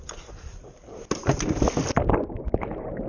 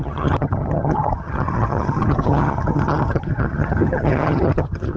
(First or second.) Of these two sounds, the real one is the first